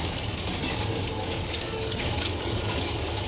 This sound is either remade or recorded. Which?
remade